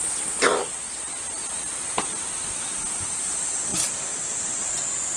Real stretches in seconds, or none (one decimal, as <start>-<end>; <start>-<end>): 0.0-5.2